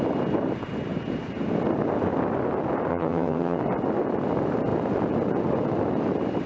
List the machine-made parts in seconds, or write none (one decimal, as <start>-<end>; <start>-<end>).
2.9-3.6